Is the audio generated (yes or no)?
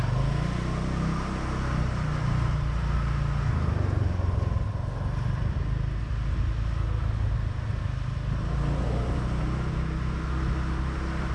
no